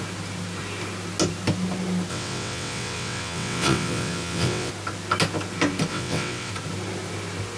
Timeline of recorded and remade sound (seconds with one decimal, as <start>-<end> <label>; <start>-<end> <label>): 0.0-2.1 recorded; 2.1-4.7 remade; 4.7-5.9 recorded; 5.9-6.5 remade; 6.5-7.6 recorded